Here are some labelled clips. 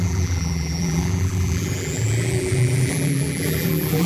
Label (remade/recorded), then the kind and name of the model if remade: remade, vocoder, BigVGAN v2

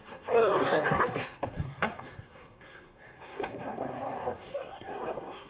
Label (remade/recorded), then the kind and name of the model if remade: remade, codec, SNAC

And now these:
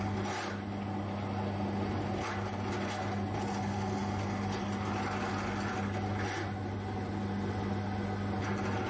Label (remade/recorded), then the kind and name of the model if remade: recorded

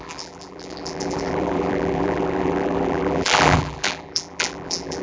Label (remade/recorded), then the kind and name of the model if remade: remade, vocoder, BigVGAN v2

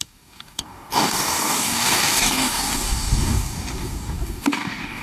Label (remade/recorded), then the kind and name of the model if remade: remade, codec, DAC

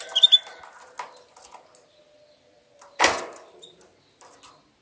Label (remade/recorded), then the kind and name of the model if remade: recorded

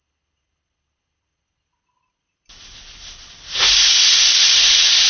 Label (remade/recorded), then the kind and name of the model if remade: recorded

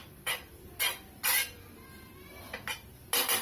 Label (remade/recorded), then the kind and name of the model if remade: recorded